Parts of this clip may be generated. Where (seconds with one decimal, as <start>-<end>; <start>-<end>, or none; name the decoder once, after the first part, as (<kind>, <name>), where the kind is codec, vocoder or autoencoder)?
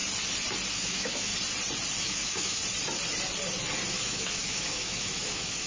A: 0.7-1.3 (autoencoder, DAC-VAE); 2.0-2.6; 3.9-5.7